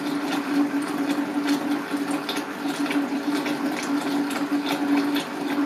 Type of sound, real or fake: real